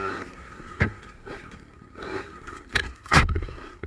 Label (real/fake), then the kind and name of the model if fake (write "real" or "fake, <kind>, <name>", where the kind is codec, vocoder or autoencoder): fake, codec, SNAC